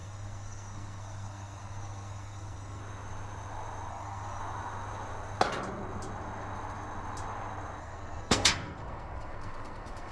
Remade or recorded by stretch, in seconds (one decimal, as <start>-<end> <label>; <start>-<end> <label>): 0.0-2.8 remade; 2.8-3.9 recorded; 3.9-4.4 remade; 4.4-7.8 recorded; 7.8-10.1 remade